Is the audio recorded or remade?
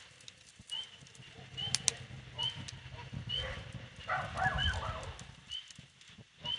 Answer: recorded